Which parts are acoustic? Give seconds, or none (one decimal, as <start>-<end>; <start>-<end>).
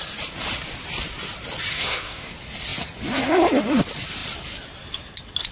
0.0-1.7; 2.3-5.5